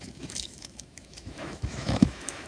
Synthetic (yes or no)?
yes